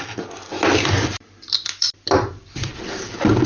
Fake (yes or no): yes